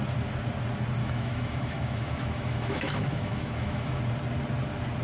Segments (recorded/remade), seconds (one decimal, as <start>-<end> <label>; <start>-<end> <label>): 0.0-1.0 recorded; 1.0-4.0 remade; 4.0-5.0 recorded